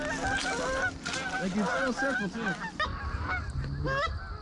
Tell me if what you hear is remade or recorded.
recorded